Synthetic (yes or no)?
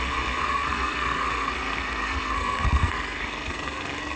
yes